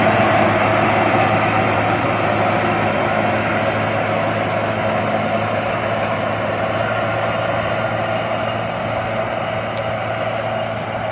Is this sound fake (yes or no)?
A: no